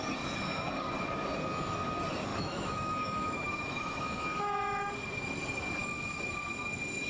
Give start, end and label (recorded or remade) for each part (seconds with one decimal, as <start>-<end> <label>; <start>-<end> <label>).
0.0-2.3 recorded; 2.3-4.9 remade; 4.9-7.1 recorded